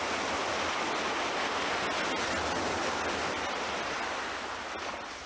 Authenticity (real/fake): real